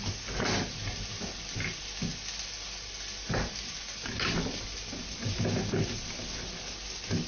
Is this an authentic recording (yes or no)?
yes